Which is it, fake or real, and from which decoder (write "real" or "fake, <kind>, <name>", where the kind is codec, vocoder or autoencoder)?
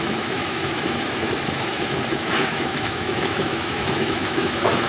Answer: fake, autoencoder, DAC-VAE